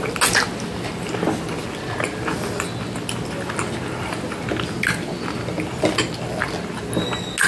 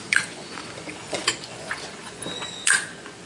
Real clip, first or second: first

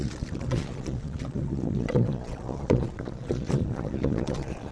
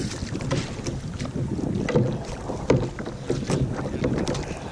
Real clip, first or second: second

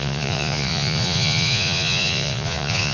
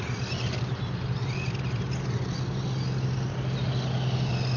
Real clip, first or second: second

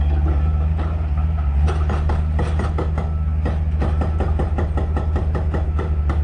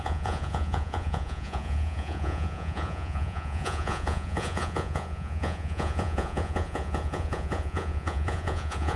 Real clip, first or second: first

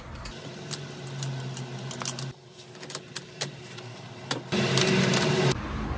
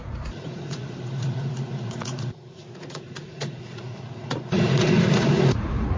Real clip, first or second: first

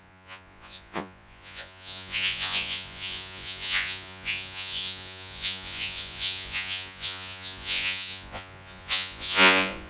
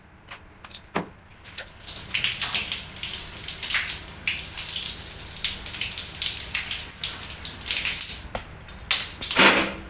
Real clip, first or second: second